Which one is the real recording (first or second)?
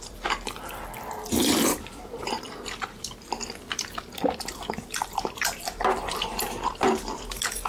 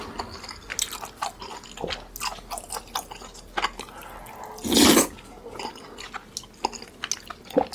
second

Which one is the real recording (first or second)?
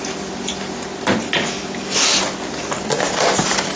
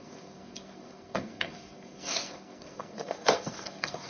first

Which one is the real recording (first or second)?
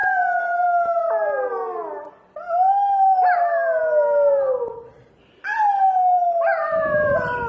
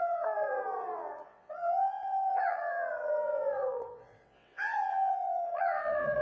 first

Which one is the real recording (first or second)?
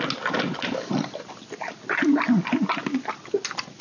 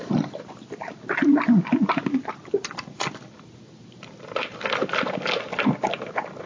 first